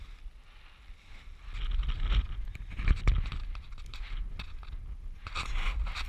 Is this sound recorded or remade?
recorded